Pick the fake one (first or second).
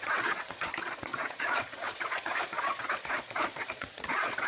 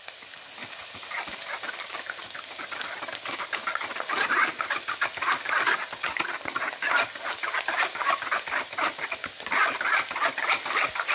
first